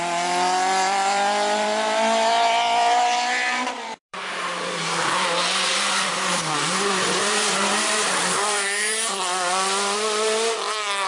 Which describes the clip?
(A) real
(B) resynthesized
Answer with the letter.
B